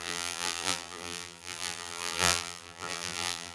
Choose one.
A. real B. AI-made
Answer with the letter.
B